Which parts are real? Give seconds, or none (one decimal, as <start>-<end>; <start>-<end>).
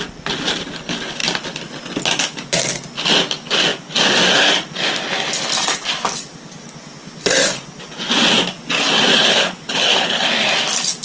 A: 0.0-9.1; 10.2-11.0